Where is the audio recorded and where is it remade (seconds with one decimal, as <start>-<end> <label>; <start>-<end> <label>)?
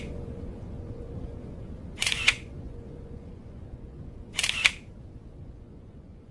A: 0.0-4.4 remade; 4.4-5.4 recorded; 5.4-6.3 remade